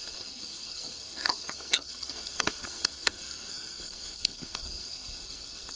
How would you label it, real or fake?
fake